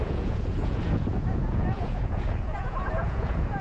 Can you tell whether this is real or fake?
fake